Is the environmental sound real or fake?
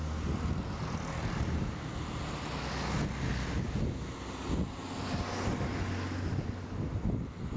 real